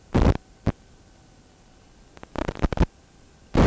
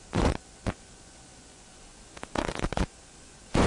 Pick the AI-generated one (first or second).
second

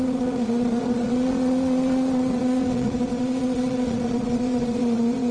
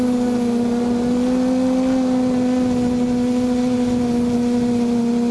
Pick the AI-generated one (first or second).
first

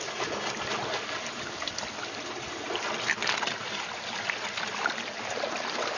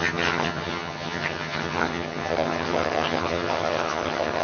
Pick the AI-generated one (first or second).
second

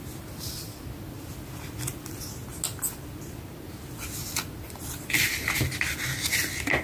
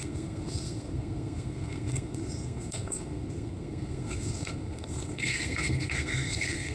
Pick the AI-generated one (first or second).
second